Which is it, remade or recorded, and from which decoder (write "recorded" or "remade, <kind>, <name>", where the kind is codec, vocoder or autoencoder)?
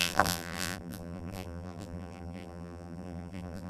remade, vocoder, BigVGAN v2